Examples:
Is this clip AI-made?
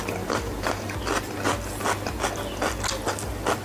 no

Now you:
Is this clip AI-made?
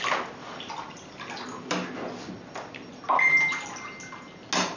no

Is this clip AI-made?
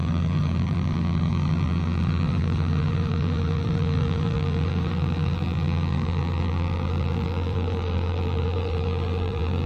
yes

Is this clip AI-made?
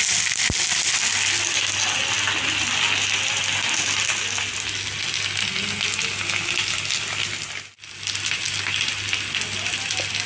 no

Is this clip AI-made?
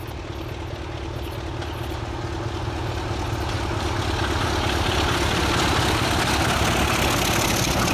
no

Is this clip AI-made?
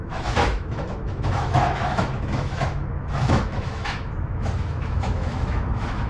yes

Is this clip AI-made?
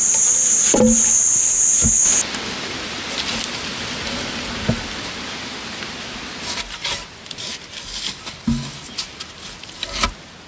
no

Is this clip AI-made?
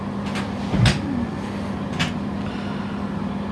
no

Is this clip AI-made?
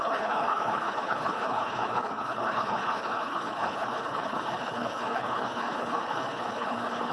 yes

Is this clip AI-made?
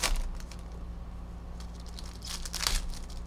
no